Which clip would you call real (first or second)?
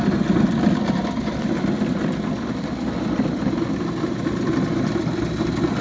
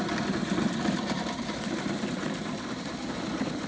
first